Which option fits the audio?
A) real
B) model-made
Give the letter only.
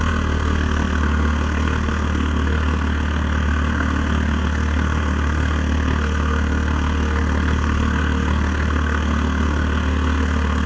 B